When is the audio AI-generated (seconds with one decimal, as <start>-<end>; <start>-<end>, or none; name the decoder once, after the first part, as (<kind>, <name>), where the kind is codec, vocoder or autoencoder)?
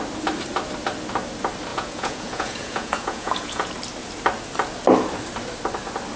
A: 1.7-3.7 (vocoder, Vocos)